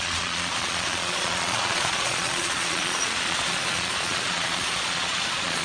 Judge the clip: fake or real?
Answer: fake